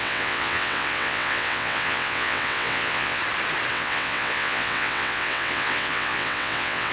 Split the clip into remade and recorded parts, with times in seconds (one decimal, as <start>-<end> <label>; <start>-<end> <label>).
0.0-3.2 remade; 3.2-3.7 recorded; 3.7-6.9 remade